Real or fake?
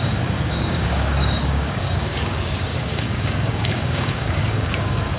fake